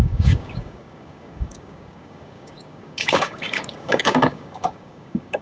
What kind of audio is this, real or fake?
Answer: fake